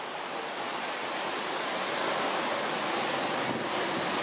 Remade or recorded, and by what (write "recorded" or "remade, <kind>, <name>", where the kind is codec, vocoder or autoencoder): recorded